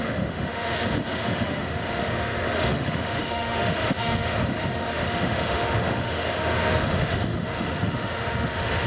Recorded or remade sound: remade